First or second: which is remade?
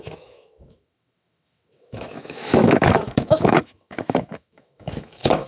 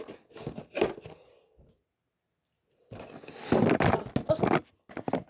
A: first